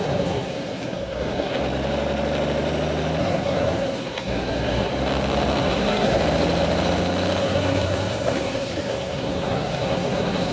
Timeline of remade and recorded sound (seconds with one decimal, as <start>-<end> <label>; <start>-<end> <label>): 0.0-1.6 remade; 1.6-3.2 recorded; 3.2-4.9 remade; 4.9-5.6 recorded; 5.6-6.2 remade; 6.2-7.4 recorded; 7.4-10.5 remade

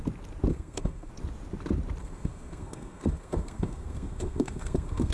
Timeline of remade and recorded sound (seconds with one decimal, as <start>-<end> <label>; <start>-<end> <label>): 0.0-0.5 recorded; 0.5-1.1 remade; 1.1-2.0 recorded; 2.0-5.1 remade

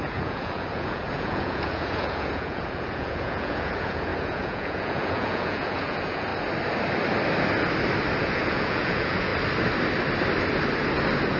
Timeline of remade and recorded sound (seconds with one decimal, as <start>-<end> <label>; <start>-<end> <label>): 0.0-6.3 remade; 6.3-8.2 recorded; 8.2-9.3 remade; 9.3-11.4 recorded

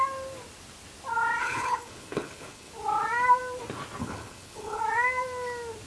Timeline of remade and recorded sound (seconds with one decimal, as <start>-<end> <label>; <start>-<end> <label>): 0.0-1.4 recorded; 1.4-2.7 remade; 2.7-4.0 recorded; 4.0-4.8 remade; 4.8-5.9 recorded